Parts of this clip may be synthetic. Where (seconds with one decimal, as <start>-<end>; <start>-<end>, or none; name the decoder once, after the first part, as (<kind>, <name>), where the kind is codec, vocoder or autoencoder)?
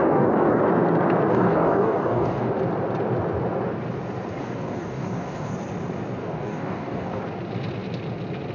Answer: 0.0-0.6 (codec, DAC); 1.3-2.5; 4.4-5.5; 6.2-7.2